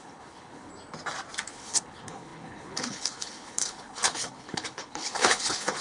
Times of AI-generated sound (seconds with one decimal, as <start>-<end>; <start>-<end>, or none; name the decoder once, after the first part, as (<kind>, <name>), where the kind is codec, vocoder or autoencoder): 0.0-0.7 (codec, HILCodec); 1.5-5.8